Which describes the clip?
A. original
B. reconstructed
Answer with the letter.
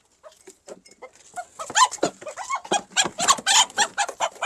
A